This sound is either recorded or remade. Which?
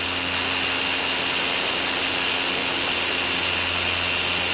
recorded